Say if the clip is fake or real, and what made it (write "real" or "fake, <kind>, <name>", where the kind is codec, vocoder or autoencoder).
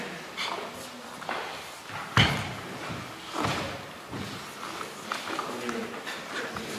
real